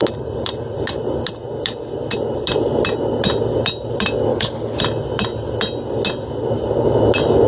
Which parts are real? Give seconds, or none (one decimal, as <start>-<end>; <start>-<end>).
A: 0.0-4.3; 4.8-7.5